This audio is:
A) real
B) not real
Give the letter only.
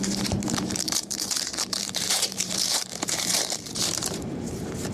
B